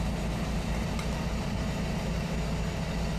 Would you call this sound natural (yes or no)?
yes